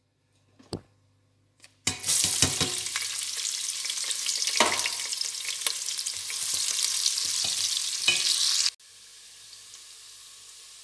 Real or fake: real